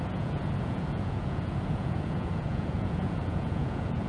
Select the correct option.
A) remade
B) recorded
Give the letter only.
A